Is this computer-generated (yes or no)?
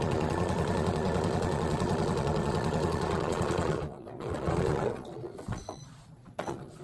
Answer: yes